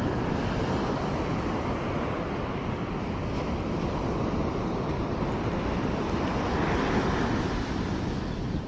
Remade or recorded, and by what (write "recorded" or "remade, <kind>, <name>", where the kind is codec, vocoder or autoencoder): recorded